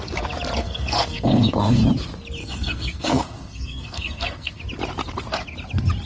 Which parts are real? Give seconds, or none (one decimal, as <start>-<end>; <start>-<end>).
0.0-0.6; 1.8-2.4; 4.6-6.1